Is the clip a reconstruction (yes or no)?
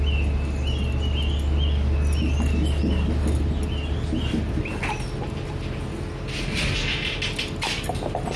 no